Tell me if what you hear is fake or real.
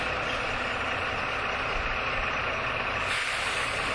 real